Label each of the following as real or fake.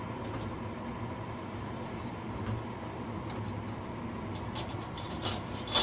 real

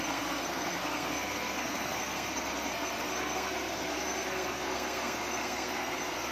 fake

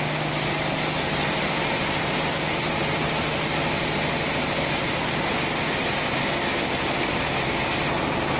real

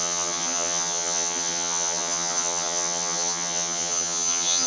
fake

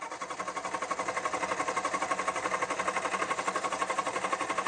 real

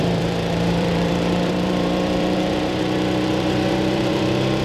fake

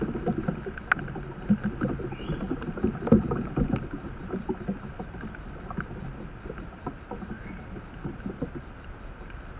real